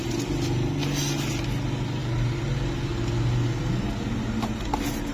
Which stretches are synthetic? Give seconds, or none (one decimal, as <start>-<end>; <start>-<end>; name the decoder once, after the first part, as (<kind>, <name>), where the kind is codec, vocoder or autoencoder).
none